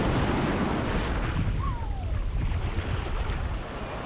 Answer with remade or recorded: recorded